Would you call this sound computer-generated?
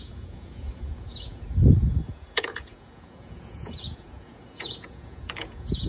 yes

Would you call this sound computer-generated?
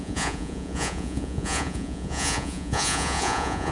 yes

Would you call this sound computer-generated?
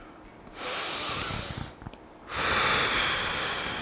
no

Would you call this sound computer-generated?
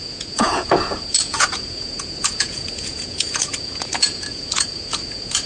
yes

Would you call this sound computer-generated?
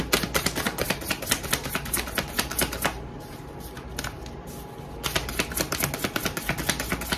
no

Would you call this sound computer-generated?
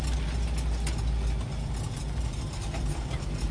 no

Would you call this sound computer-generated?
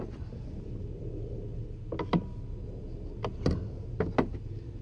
no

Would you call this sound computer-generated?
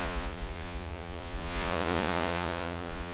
yes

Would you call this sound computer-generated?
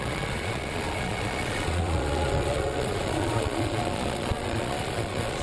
yes